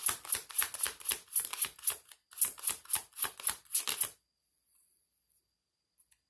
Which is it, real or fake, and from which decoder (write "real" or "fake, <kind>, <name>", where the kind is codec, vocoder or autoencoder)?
real